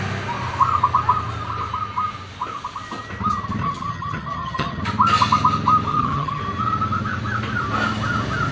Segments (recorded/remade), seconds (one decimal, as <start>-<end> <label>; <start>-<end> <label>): 0.0-3.6 recorded; 3.6-4.8 remade; 4.8-5.9 recorded; 5.9-6.4 remade; 6.4-8.5 recorded